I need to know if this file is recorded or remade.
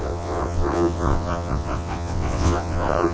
remade